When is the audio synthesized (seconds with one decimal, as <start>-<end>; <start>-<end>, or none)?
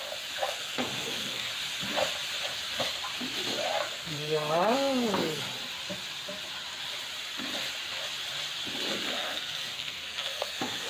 0.4-1.5; 3.9-5.4; 9.1-10.9